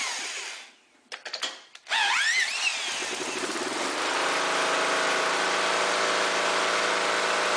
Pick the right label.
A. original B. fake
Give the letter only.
A